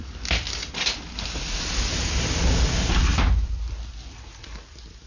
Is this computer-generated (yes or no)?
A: no